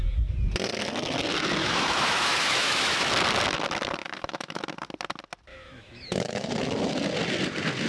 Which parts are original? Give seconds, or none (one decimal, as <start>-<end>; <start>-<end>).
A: 0.0-1.6; 3.1-4.0; 4.6-5.5; 6.5-7.9